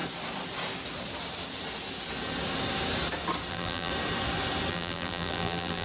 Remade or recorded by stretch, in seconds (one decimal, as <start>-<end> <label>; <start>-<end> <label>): 0.0-3.5 recorded; 3.5-3.9 remade; 3.9-4.7 recorded; 4.7-5.8 remade